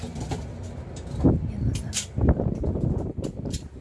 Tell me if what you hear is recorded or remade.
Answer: recorded